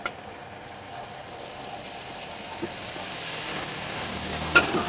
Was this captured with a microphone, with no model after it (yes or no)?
yes